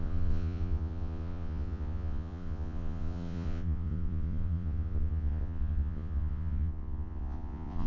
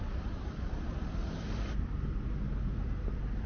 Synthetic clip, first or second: first